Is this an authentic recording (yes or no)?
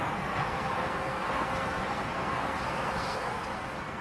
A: no